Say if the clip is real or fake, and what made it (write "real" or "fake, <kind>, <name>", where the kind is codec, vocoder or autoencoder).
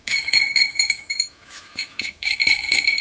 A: fake, autoencoder, DAC-VAE